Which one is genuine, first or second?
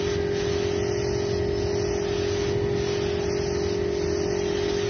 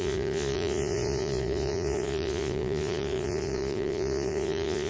first